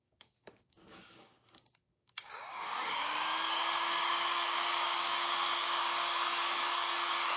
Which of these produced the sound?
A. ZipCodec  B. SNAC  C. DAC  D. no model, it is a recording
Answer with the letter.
C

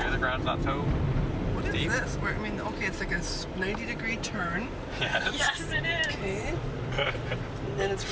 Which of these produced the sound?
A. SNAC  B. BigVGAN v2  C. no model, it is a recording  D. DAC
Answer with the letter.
C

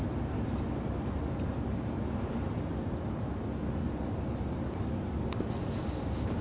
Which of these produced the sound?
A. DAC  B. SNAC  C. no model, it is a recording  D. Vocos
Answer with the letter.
C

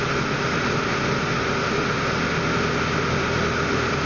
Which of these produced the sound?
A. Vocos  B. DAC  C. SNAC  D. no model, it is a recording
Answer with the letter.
D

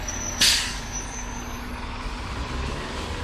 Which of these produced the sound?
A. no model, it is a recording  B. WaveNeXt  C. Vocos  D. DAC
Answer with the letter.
D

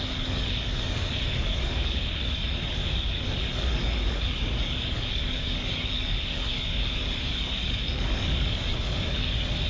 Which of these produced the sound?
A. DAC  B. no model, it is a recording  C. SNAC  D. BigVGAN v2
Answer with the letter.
A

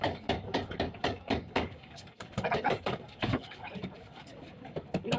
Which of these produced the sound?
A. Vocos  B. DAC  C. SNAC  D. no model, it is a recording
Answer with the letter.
B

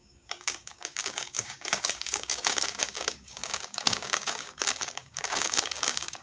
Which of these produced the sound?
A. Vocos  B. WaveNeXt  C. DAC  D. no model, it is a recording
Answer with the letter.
C